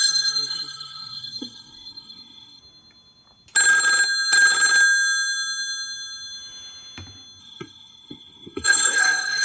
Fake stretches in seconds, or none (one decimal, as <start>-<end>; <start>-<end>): 0.0-2.6; 7.4-9.4